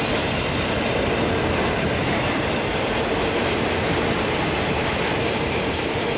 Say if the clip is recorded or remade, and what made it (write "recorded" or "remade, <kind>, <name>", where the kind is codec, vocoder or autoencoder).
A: recorded